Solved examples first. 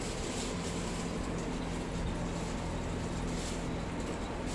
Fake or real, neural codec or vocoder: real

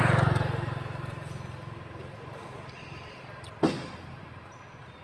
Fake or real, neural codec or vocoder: real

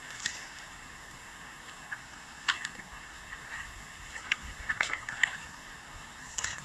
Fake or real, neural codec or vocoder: fake, codec, SNAC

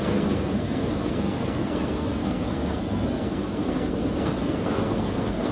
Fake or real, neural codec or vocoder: fake, codec, SNAC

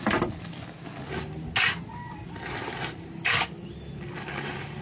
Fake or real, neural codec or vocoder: real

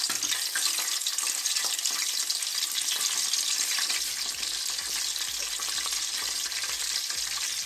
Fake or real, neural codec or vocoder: real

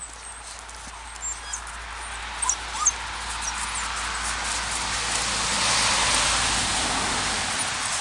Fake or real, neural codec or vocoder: real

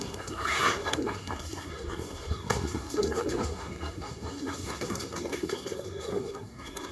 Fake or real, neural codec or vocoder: fake, codec, SNAC